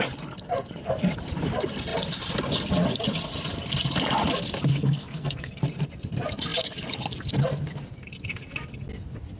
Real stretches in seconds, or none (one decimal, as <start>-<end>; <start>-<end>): 0.0-4.7; 5.6-9.4